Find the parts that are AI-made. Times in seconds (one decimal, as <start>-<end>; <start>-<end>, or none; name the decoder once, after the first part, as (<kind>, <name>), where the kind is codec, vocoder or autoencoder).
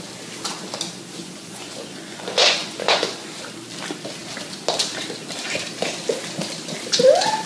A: 1.2-3.4 (vocoder, Vocos)